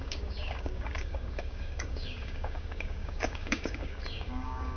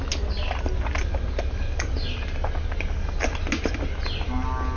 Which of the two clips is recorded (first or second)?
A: second